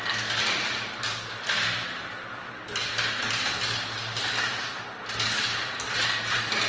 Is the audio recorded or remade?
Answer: recorded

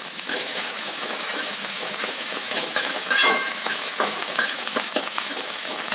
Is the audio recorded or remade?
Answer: remade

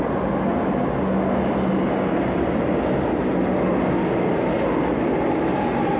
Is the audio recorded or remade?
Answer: recorded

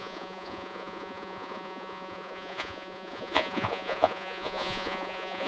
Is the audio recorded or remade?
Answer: remade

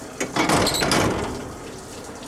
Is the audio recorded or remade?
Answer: recorded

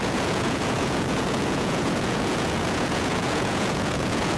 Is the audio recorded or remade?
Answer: remade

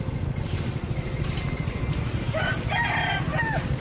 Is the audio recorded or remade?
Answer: recorded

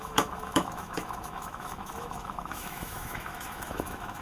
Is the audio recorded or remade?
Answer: remade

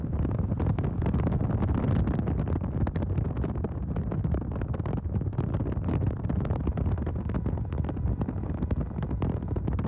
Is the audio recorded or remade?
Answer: recorded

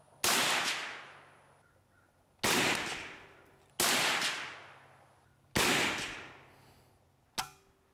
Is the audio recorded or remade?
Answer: recorded